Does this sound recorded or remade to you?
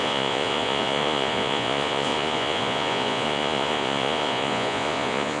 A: remade